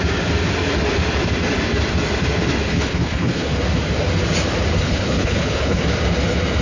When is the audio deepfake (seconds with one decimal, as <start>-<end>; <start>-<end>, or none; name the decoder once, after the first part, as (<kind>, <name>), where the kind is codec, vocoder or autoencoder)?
2.7-3.6 (codec, HILCodec); 4.7-5.8